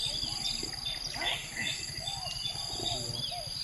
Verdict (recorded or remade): recorded